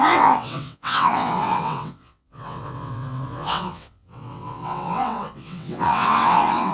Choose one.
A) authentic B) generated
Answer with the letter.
B